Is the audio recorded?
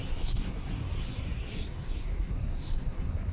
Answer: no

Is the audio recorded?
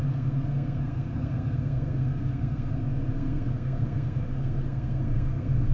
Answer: no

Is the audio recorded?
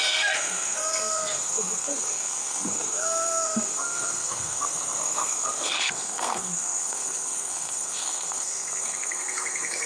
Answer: no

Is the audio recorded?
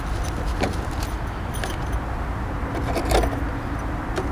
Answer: yes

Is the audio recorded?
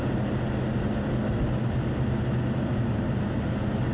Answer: yes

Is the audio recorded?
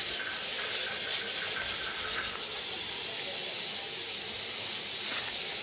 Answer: yes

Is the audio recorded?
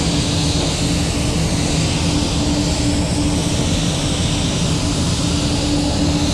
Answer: yes